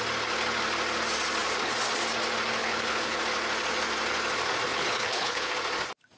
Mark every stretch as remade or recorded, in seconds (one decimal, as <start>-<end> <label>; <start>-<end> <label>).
0.0-2.6 recorded; 2.6-3.2 remade; 3.2-4.7 recorded; 4.7-5.5 remade; 5.5-6.2 recorded